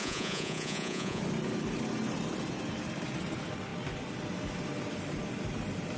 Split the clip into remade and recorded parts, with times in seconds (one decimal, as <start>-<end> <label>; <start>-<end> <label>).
0.0-1.2 remade; 1.2-6.0 recorded